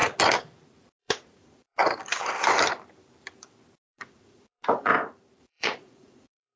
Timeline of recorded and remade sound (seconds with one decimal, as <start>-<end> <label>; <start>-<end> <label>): 0.0-1.0 recorded; 1.0-1.8 remade; 1.8-3.8 recorded; 3.8-4.9 remade; 4.9-5.4 recorded; 5.4-6.6 remade